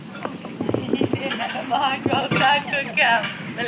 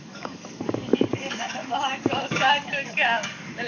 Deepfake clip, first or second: second